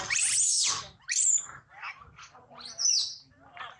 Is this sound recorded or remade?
recorded